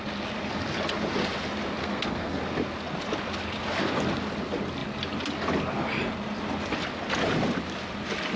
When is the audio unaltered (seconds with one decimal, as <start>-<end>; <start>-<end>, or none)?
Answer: 0.0-1.8; 2.4-8.4